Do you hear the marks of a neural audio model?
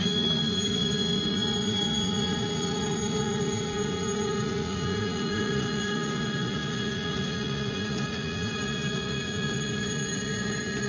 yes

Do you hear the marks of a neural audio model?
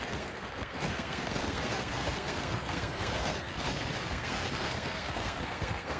yes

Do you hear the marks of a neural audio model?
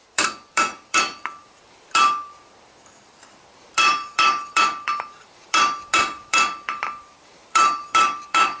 yes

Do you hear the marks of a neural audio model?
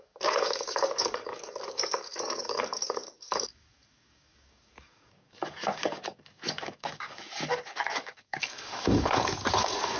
yes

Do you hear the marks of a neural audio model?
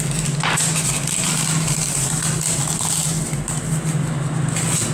no